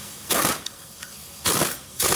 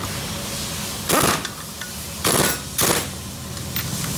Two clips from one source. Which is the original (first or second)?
second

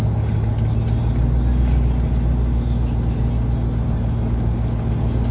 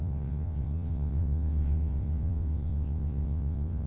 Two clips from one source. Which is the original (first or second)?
first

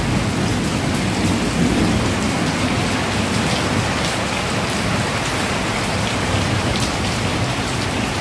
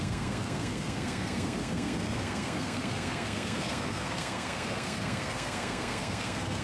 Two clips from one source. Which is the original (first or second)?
first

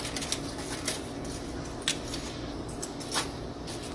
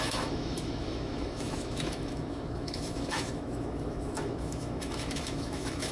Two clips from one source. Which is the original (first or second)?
first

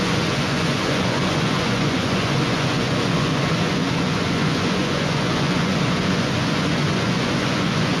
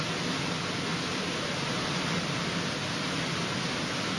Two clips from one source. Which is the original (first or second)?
second